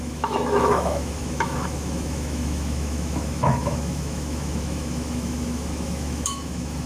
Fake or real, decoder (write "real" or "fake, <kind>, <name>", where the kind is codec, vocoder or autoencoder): fake, autoencoder, DAC-VAE